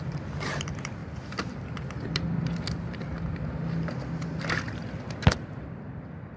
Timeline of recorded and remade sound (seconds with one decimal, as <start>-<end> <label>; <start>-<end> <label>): 0.0-1.0 remade; 1.0-2.0 recorded; 2.0-6.4 remade